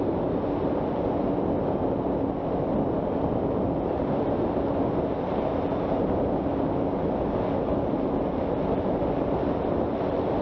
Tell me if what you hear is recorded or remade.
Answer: recorded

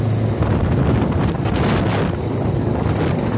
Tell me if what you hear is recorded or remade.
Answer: recorded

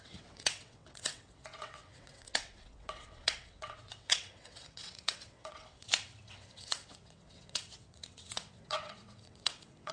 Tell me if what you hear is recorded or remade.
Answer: remade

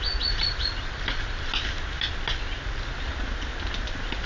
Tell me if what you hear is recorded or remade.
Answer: recorded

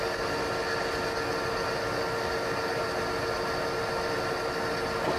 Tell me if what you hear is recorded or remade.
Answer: recorded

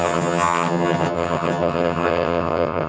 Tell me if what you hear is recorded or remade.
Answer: remade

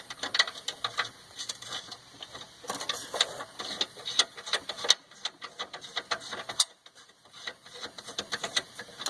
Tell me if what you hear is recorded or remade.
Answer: recorded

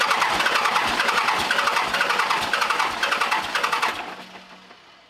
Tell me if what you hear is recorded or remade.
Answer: recorded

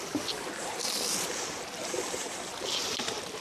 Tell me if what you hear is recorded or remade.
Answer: recorded